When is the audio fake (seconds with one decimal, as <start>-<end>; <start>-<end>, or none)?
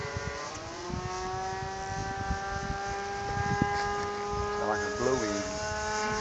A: 0.0-0.9